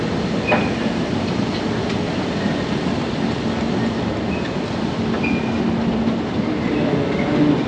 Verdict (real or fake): real